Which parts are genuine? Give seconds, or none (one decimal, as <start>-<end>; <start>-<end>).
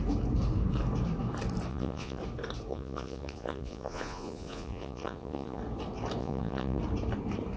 0.0-1.7; 2.2-2.7; 5.6-6.2; 6.8-7.6